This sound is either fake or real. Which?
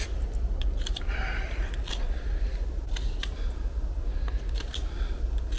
real